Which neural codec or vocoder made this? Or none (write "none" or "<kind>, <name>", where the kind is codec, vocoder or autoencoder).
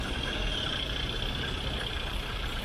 none